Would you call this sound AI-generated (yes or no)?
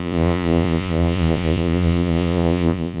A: yes